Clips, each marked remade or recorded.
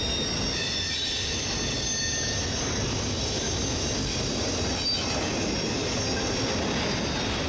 recorded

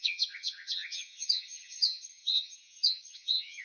remade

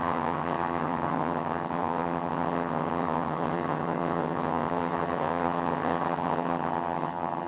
remade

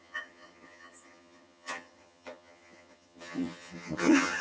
remade